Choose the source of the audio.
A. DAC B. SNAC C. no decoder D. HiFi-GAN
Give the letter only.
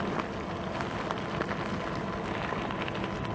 C